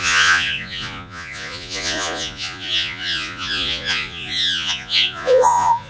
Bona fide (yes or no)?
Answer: no